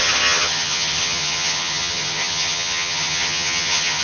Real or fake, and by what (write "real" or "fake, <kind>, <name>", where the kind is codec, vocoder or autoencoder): fake, vocoder, HiFi-GAN